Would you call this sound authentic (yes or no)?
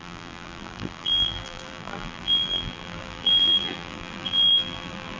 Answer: no